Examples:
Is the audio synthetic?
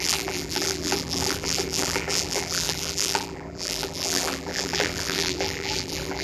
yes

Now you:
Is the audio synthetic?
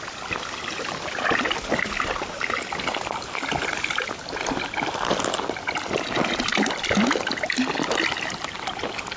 no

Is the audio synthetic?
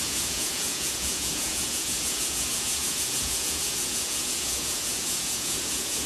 yes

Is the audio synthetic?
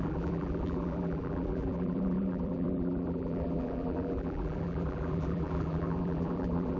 yes